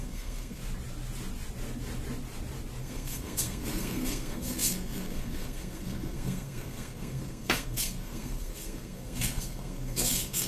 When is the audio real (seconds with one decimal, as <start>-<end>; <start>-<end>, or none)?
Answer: 0.6-2.8

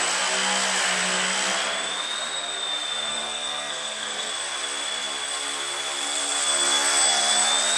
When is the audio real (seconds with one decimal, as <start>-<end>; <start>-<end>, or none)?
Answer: 0.0-3.1; 4.3-7.8

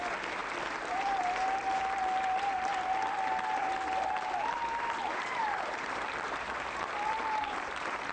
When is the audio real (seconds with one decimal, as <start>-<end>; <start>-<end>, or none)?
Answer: 0.0-0.4; 1.8-3.6; 6.5-8.1

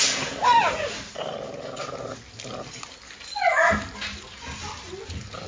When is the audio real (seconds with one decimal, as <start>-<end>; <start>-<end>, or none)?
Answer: 0.0-5.5

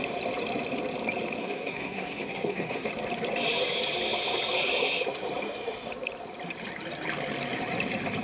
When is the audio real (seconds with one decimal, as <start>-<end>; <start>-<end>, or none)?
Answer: 0.0-1.4; 2.9-8.2

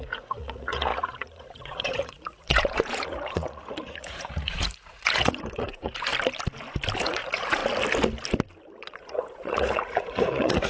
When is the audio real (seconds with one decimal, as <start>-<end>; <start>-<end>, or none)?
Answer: 6.1-7.0; 7.6-8.8